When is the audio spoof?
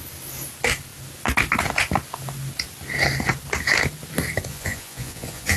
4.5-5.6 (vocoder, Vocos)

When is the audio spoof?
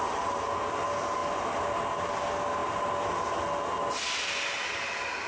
none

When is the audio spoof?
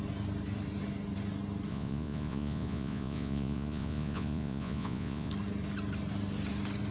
1.7-5.3 (vocoder, Vocos)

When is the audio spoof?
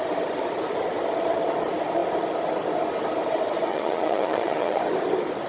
3.7-4.8 (vocoder, Vocos)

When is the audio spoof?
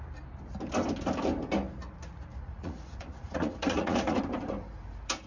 2.3-4.2 (vocoder, Vocos)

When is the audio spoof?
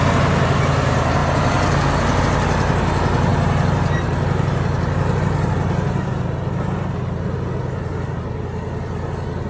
none